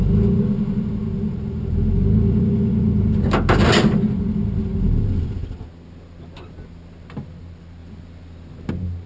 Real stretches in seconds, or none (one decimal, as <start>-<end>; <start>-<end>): 0.0-9.1

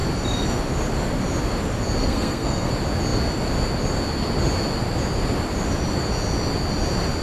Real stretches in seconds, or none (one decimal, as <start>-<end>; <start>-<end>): 0.0-2.0; 2.7-7.2

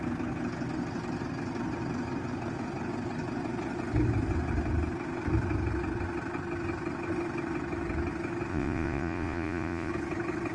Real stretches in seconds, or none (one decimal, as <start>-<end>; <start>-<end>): 0.0-8.5; 9.9-10.5

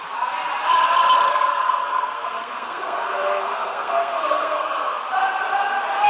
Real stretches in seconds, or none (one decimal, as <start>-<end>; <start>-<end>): 0.0-1.3; 5.0-6.1

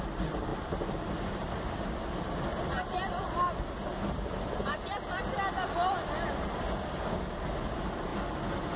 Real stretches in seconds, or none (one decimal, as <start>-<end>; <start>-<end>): 0.0-0.5; 5.2-8.8

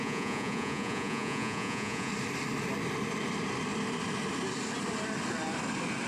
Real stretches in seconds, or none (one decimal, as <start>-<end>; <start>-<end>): 2.1-6.1

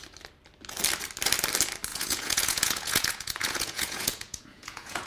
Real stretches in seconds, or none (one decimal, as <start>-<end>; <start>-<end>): 0.0-1.9